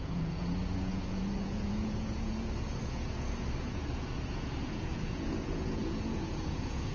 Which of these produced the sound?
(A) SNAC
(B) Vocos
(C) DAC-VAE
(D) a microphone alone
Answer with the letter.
B